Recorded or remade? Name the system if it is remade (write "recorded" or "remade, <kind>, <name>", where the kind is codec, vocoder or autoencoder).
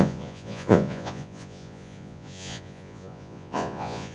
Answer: remade, vocoder, Vocos